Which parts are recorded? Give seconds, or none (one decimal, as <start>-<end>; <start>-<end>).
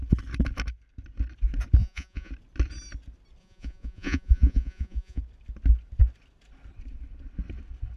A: 0.0-1.8; 2.3-3.4; 5.2-8.0